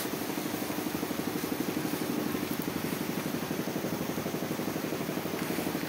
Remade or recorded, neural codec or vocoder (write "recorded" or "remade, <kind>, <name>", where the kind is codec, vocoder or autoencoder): recorded